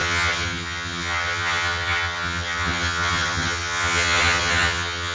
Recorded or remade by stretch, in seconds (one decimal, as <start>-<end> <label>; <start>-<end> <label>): 0.0-5.1 remade